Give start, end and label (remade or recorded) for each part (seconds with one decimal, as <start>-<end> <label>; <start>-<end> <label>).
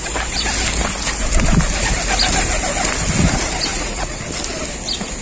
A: 0.0-3.7 recorded; 3.7-4.2 remade; 4.2-5.2 recorded